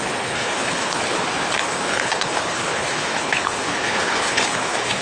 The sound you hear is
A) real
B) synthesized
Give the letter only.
B